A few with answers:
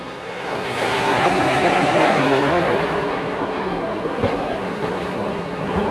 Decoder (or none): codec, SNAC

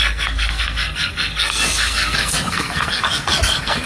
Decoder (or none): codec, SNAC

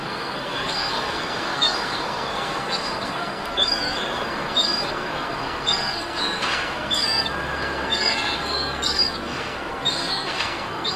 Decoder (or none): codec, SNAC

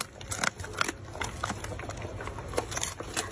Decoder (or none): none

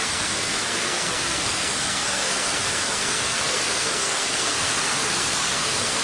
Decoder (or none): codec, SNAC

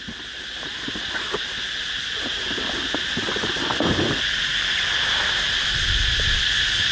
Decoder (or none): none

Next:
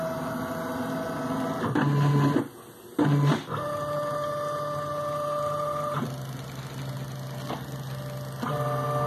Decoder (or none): none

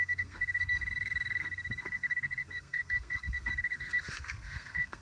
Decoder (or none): codec, SNAC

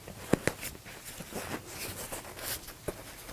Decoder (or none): none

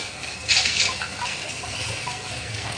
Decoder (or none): codec, SNAC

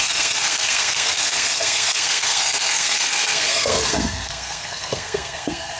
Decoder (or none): codec, SNAC